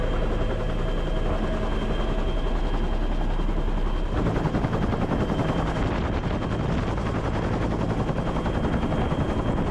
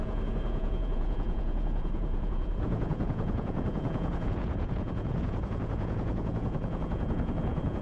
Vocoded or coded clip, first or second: second